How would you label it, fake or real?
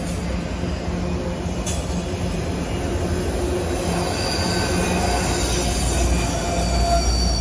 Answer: real